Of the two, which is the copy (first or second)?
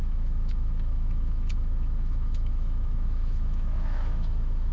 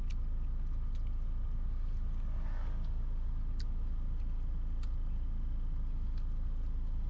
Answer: first